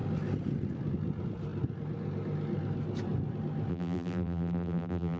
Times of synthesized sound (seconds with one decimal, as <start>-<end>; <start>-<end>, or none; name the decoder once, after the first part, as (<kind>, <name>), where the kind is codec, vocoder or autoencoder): 3.7-5.2 (vocoder, BigVGAN v2)